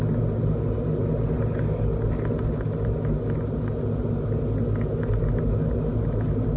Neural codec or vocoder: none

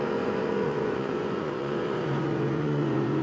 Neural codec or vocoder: vocoder, Vocos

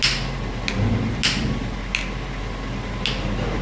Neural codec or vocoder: none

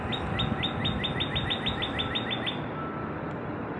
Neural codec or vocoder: none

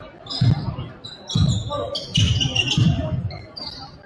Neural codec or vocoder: none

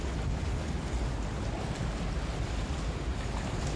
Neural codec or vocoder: none